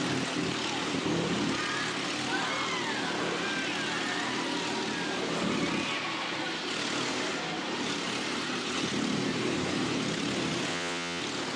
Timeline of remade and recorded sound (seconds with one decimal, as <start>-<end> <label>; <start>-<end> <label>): 0.0-10.7 recorded; 10.7-11.2 remade; 11.2-11.6 recorded